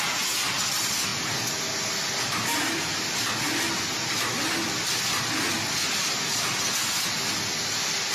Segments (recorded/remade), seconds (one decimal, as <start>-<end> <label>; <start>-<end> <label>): 0.0-8.1 recorded